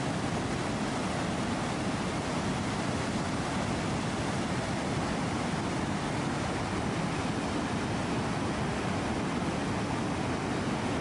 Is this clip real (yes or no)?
yes